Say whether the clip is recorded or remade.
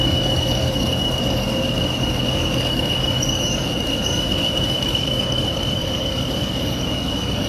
remade